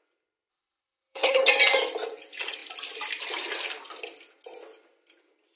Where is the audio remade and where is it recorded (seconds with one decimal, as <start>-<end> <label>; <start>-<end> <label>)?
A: 0.0-0.5 recorded; 0.5-1.4 remade; 1.4-5.6 recorded